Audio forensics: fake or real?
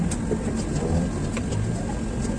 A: real